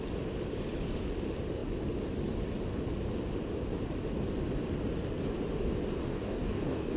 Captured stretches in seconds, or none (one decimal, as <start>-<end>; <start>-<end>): 0.0-6.1